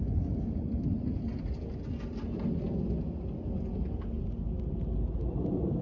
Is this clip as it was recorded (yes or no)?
yes